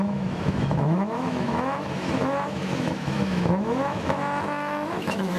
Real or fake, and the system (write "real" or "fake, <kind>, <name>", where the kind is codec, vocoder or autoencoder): fake, autoencoder, DAC-VAE